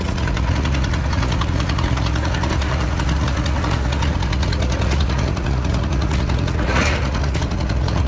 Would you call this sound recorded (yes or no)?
no